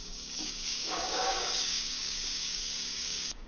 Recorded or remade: remade